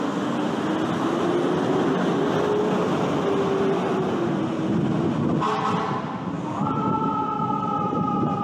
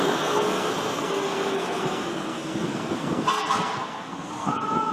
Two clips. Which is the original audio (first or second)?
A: first